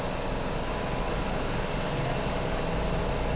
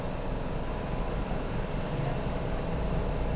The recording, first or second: first